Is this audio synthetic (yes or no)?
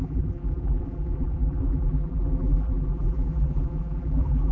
yes